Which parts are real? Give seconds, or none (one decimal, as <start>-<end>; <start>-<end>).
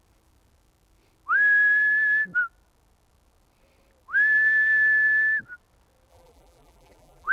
0.0-6.1